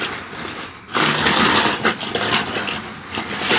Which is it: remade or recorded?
recorded